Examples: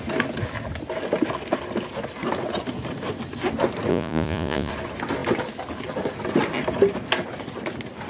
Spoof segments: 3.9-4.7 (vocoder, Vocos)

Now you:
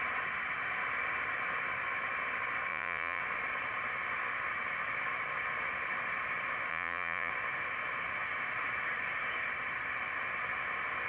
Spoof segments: 2.7-3.2 (vocoder, Vocos); 6.7-7.3

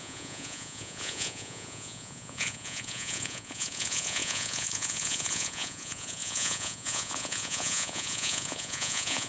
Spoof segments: 0.0-9.3 (vocoder, Vocos)